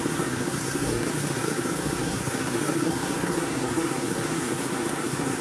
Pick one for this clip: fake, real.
fake